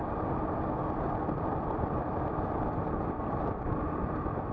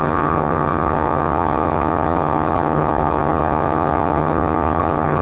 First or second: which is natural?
first